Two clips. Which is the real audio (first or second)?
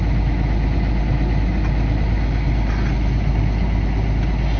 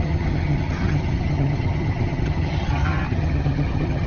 first